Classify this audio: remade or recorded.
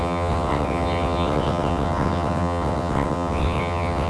remade